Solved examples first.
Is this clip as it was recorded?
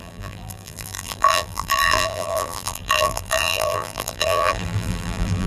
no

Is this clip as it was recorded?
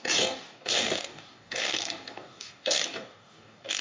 no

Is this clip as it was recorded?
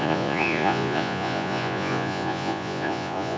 no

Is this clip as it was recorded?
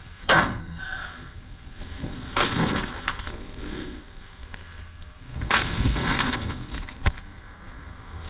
no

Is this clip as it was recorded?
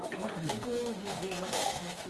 no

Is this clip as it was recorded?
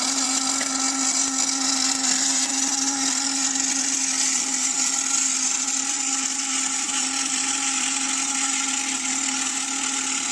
yes